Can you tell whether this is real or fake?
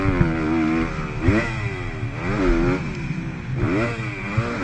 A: real